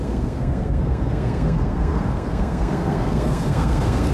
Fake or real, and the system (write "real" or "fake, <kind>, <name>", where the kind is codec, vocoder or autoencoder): fake, codec, SNAC